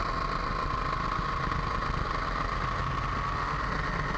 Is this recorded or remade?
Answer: recorded